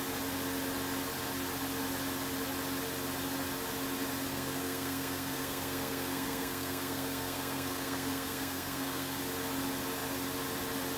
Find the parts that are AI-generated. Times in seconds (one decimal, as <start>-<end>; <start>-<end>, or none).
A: 4.3-9.2